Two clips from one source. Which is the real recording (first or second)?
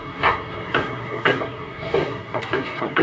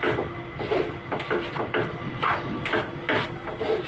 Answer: second